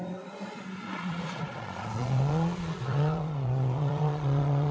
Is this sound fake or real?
fake